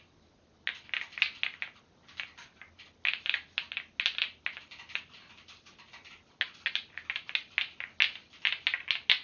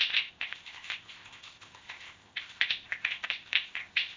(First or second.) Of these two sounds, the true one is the first